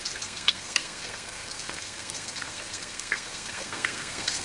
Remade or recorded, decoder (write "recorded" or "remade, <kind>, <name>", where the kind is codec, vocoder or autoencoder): remade, codec, SNAC